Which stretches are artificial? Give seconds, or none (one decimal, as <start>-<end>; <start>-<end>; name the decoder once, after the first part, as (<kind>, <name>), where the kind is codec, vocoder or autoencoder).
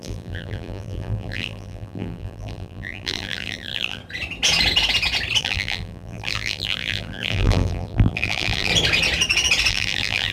0.0-4.0 (vocoder, BigVGAN v2); 5.4-8.7; 9.7-10.3